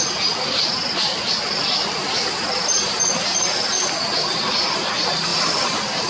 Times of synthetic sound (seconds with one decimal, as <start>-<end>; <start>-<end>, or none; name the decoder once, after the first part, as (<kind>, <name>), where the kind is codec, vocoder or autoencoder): none